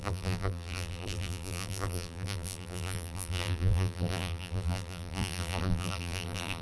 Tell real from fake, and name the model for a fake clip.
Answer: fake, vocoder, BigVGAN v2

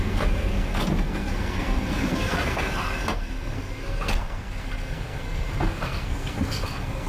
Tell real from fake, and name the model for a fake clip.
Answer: fake, codec, SNAC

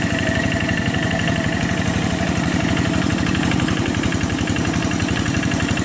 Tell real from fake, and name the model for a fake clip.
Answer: fake, vocoder, BigVGAN v2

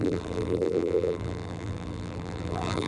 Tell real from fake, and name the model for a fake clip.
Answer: fake, vocoder, BigVGAN v2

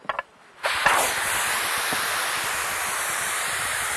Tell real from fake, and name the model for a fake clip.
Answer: real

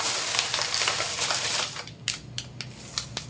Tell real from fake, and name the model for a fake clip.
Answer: real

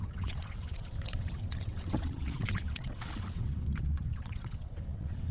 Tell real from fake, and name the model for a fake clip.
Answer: fake, vocoder, WaveNeXt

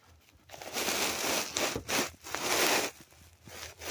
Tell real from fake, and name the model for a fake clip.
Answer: real